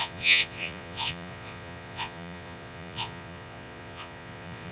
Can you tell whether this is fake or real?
fake